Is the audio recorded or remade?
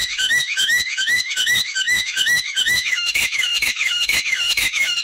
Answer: remade